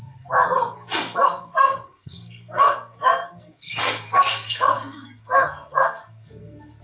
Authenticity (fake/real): fake